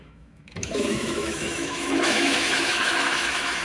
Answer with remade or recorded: remade